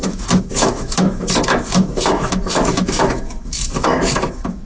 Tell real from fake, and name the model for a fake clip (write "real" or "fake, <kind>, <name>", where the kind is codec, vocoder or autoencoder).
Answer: fake, autoencoder, DAC-VAE